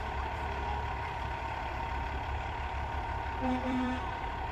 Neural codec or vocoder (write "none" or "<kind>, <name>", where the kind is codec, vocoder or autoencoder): vocoder, BigVGAN v2